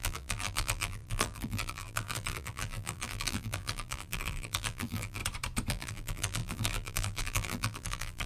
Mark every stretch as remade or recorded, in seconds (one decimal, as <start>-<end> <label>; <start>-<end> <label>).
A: 0.0-5.2 remade; 5.2-5.7 recorded; 5.7-8.3 remade